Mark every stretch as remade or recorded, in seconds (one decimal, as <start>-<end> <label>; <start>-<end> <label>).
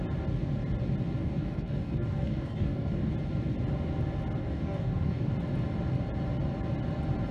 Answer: 0.0-1.2 recorded; 1.2-3.1 remade; 3.1-4.4 recorded; 4.4-5.3 remade; 5.3-7.3 recorded